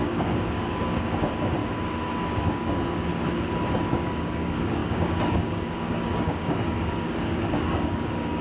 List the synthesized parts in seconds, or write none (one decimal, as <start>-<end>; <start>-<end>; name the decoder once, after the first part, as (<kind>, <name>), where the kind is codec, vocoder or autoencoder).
0.0-1.6 (codec, DAC); 2.3-3.1; 3.9-8.4